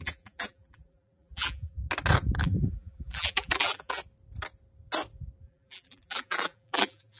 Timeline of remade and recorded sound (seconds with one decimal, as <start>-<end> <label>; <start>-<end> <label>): 0.0-1.8 remade; 1.8-2.4 recorded; 2.4-4.0 remade; 4.0-5.4 recorded; 5.4-7.2 remade